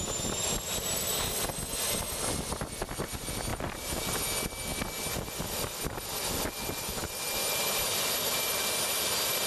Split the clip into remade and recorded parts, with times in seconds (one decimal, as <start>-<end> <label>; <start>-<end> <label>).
0.0-3.5 recorded; 3.5-4.2 remade; 4.2-9.5 recorded